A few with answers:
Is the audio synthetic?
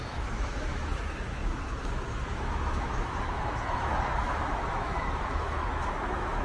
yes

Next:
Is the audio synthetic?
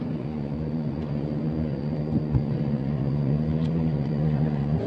yes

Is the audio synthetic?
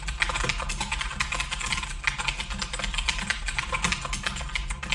no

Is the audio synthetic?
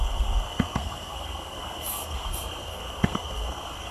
yes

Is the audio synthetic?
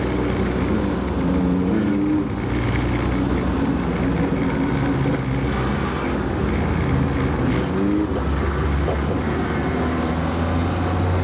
no